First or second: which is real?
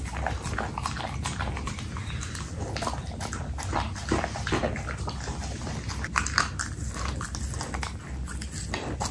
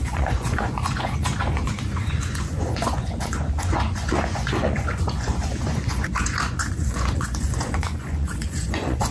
first